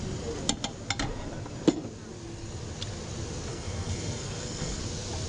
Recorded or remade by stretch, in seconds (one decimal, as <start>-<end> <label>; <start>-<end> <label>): 0.0-3.5 recorded; 3.5-4.8 remade; 4.8-5.3 recorded